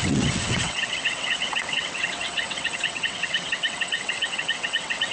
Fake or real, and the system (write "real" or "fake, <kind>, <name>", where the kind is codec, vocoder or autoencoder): fake, vocoder, WaveNeXt